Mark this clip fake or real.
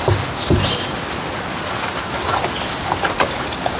real